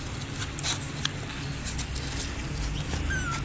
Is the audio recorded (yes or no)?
yes